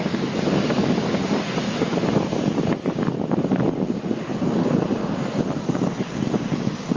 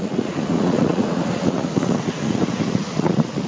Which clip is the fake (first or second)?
second